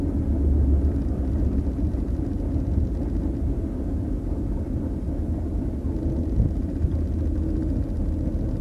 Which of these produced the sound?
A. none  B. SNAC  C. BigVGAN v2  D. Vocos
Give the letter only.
A